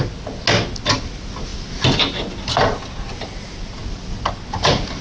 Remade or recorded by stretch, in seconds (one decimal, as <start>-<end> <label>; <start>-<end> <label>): 0.0-5.0 recorded